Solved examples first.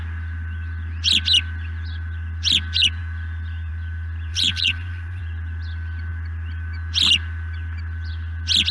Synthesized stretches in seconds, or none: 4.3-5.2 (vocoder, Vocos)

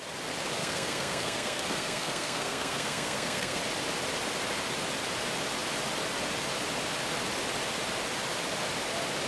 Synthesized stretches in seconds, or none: 0.6-3.6 (codec, SNAC)

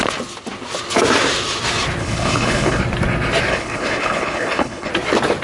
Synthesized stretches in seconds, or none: 2.0-2.8 (codec, HILCodec); 3.5-4.9

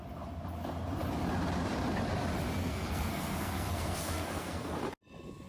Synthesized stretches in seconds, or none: 2.6-4.7 (codec, SNAC)

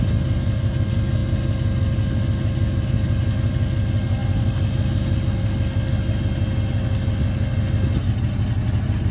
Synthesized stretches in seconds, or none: none

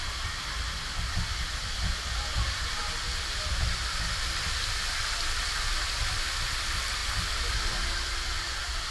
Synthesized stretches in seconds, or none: none

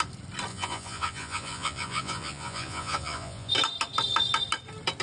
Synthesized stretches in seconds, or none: 0.5-3.5 (vocoder, Vocos)

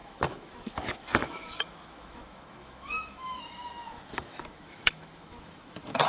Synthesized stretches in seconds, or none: 0.0-6.1 (autoencoder, DAC-VAE)